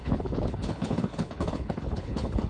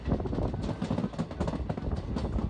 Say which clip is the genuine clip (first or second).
second